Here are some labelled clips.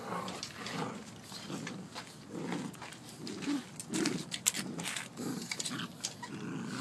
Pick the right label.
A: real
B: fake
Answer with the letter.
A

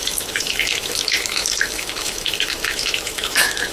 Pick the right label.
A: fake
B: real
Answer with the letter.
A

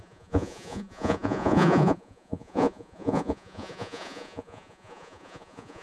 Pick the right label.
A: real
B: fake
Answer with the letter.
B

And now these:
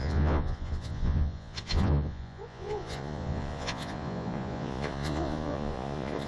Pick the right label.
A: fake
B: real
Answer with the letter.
A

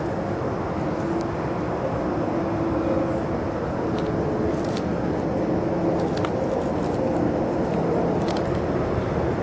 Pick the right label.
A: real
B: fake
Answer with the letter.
A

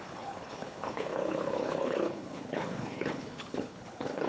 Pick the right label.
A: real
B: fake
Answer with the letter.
B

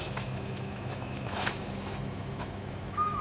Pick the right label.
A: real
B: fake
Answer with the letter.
B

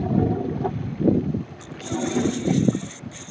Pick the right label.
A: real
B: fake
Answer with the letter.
A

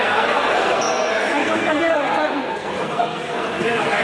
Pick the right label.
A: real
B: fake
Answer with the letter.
B